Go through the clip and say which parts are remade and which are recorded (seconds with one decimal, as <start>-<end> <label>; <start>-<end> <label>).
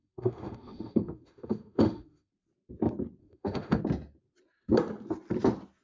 0.0-2.3 remade; 2.3-3.2 recorded; 3.2-3.8 remade; 3.8-5.8 recorded